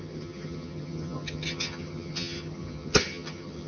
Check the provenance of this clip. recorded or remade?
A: remade